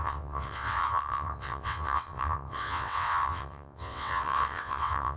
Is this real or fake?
fake